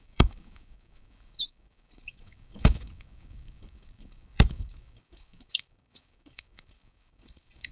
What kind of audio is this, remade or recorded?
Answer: remade